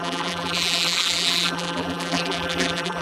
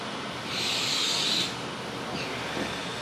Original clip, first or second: second